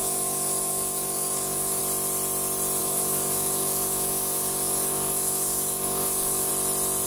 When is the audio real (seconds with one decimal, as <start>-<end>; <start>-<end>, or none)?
1.8-2.8; 6.5-7.1